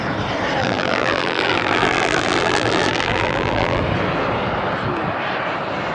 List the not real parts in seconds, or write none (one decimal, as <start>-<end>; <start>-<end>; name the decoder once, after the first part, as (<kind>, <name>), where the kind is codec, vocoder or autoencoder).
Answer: 0.6-3.8 (vocoder, BigVGAN v2)